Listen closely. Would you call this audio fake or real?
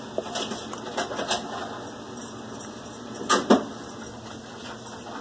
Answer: real